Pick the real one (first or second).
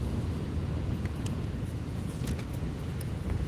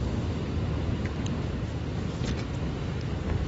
second